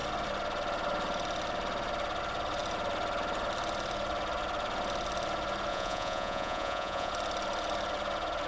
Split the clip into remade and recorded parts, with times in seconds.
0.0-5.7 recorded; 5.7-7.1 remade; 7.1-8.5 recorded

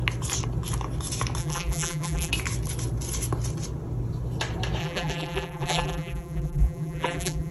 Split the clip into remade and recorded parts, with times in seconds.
0.0-1.4 recorded; 1.4-2.3 remade; 2.3-4.8 recorded; 4.8-7.5 remade

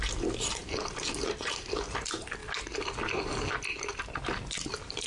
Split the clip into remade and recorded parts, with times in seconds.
0.0-5.1 recorded

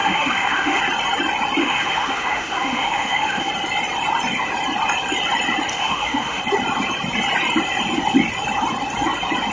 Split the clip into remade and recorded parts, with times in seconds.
0.0-0.8 remade; 0.8-1.6 recorded; 1.6-3.5 remade; 3.5-5.7 recorded; 5.7-6.4 remade; 6.4-9.5 recorded

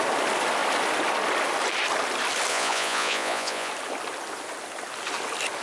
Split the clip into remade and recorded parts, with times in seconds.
0.0-2.5 recorded; 2.5-3.7 remade; 3.7-5.6 recorded

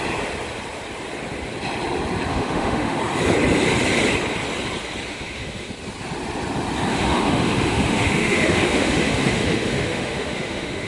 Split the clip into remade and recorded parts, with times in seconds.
0.0-2.3 recorded; 2.3-3.0 remade; 3.0-5.1 recorded; 5.1-5.7 remade; 5.7-6.9 recorded; 6.9-10.9 remade